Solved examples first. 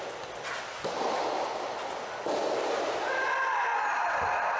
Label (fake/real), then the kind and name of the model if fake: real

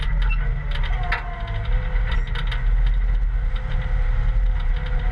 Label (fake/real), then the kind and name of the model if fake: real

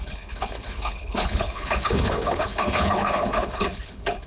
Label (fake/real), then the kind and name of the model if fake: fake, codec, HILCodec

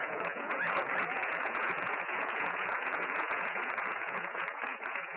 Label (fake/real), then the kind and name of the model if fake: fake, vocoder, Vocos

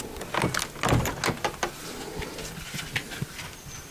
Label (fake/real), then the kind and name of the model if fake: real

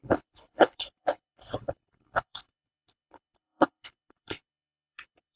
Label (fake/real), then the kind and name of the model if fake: fake, codec, HILCodec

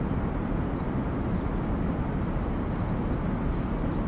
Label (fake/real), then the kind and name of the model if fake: real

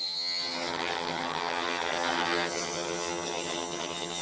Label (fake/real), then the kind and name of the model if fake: fake, vocoder, HiFi-GAN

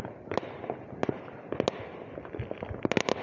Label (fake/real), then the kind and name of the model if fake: real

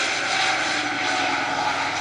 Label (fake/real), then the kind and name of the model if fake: real